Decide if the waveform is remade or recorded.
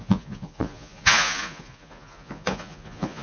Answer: remade